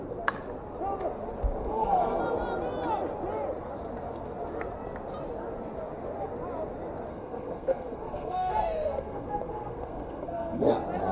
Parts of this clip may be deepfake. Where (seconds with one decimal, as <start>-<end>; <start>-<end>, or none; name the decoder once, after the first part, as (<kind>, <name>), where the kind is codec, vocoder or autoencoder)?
1.6-2.2 (codec, SNAC); 7.1-10.7